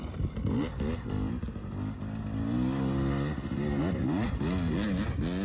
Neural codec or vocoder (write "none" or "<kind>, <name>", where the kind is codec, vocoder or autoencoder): none